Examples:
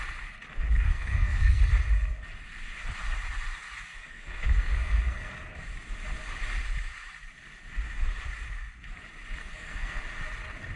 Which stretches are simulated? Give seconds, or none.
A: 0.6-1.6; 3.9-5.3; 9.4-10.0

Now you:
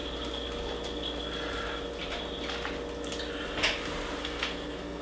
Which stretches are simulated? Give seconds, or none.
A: 4.2-5.0

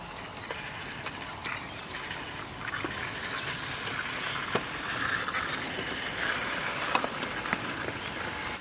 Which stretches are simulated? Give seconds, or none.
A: none